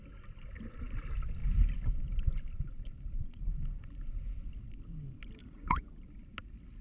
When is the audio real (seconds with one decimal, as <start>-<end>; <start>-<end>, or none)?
0.0-5.4; 5.9-6.8